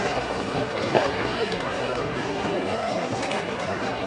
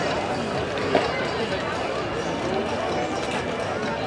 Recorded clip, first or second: second